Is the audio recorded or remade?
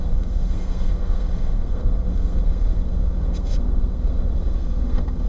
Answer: remade